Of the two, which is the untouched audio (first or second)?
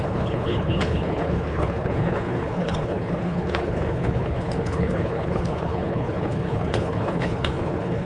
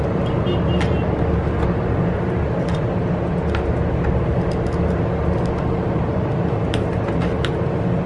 second